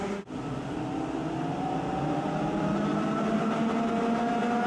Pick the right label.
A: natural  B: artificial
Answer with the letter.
A